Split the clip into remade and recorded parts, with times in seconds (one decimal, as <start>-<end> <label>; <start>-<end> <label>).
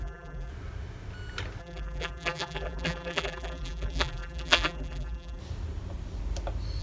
0.0-0.5 remade; 0.5-1.6 recorded; 1.6-5.4 remade; 5.4-6.8 recorded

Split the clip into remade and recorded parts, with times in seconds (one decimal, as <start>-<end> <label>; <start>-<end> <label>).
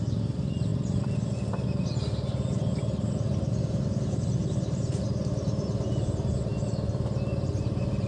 0.0-4.4 recorded; 4.4-5.0 remade; 5.0-8.1 recorded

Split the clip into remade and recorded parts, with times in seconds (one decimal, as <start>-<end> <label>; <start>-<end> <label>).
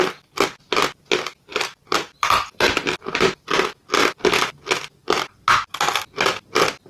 0.0-1.5 recorded; 1.5-3.6 remade; 3.6-6.9 recorded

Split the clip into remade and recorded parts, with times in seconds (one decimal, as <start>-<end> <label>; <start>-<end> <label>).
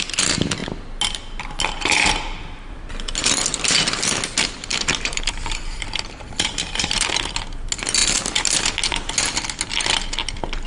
0.0-4.7 recorded; 4.7-7.1 remade; 7.1-10.7 recorded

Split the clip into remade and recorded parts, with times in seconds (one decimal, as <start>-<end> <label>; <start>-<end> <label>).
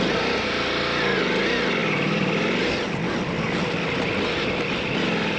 0.0-5.4 recorded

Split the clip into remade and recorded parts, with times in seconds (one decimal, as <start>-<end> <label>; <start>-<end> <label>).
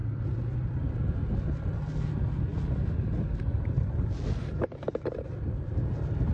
0.0-6.3 recorded